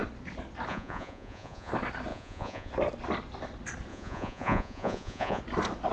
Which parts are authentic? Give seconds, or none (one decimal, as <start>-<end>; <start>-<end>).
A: 0.0-0.7; 1.7-2.1; 2.7-3.9; 5.4-5.9